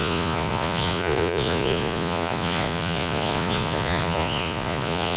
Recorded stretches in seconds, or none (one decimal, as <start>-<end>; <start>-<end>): none